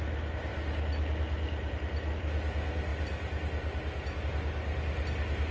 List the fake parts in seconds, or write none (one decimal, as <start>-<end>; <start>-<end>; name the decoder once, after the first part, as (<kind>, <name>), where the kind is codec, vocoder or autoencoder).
none